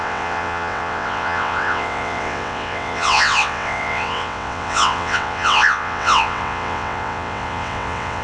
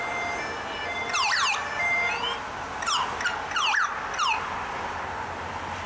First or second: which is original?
second